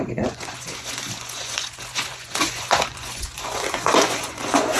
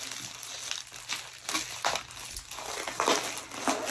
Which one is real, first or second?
second